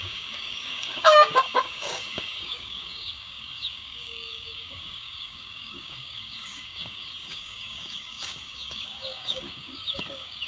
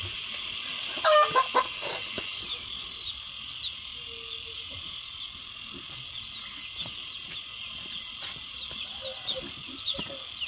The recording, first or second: second